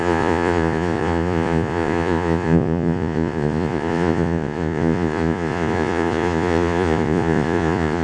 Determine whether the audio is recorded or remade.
remade